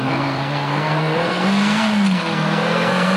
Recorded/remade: remade